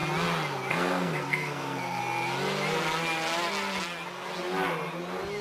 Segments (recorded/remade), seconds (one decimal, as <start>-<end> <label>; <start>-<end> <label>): 0.0-0.7 recorded; 0.7-2.0 remade; 2.0-5.4 recorded